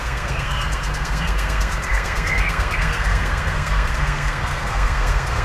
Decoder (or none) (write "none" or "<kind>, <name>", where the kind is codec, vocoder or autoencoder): codec, SNAC